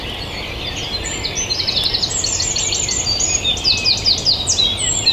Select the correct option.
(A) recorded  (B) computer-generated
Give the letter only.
A